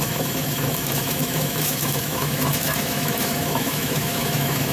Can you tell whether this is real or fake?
fake